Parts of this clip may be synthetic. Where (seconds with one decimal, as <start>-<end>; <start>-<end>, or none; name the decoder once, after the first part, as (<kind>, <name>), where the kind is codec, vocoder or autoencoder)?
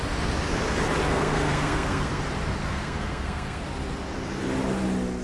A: 1.1-2.2 (codec, SNAC); 2.6-3.6